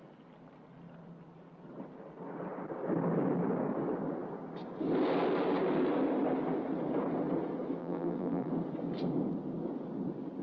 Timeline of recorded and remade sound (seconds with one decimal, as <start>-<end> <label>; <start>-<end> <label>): 0.0-7.8 recorded; 7.8-8.5 remade; 8.5-10.4 recorded

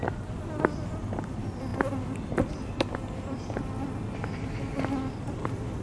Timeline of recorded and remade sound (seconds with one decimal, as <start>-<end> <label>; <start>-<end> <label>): 0.0-5.8 recorded

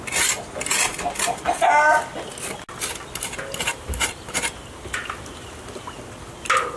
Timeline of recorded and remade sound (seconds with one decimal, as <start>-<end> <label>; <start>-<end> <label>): 0.0-3.7 recorded; 3.7-4.4 remade; 4.4-6.8 recorded

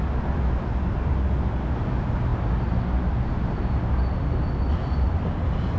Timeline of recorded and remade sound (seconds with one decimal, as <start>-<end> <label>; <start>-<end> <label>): 0.0-5.8 recorded